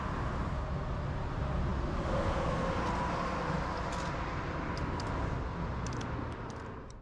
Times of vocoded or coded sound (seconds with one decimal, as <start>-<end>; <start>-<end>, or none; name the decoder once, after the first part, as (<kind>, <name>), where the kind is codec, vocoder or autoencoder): none